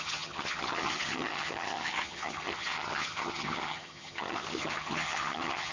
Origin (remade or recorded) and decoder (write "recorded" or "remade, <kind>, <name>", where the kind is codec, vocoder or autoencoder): remade, vocoder, HiFi-GAN